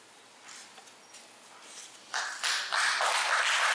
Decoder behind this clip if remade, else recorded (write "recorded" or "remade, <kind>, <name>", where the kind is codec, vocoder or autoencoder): recorded